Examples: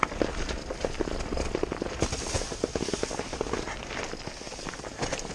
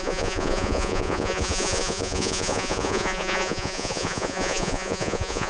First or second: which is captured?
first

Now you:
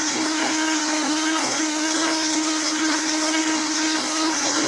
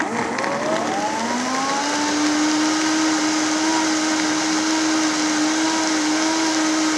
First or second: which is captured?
second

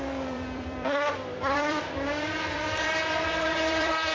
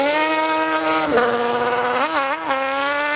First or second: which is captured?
second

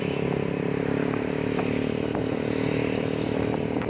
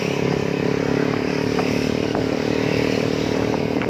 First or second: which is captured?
first